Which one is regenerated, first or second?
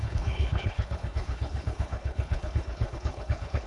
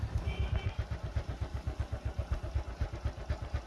first